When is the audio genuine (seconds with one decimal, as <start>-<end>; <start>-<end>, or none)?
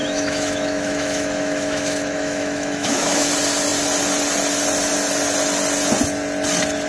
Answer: 3.3-6.9